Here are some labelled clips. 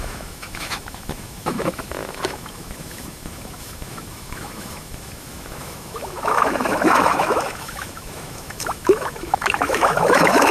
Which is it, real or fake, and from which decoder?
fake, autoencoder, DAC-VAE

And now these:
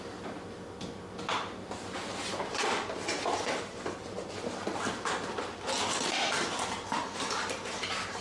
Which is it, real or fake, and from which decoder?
real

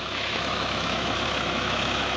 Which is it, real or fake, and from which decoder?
fake, autoencoder, DAC-VAE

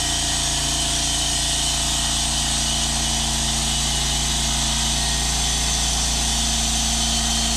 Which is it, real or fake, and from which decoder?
real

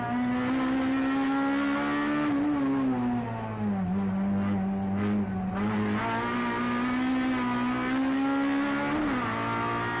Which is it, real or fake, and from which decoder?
real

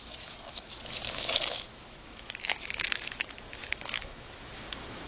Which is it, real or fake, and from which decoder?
fake, autoencoder, DAC-VAE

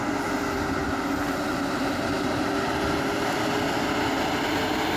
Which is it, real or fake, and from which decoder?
real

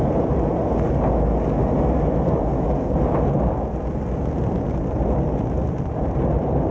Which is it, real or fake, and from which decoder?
real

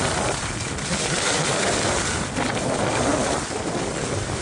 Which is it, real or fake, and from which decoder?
real